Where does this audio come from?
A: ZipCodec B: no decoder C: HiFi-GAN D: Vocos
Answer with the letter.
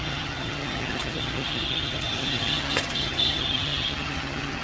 C